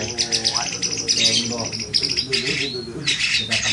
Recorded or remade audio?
recorded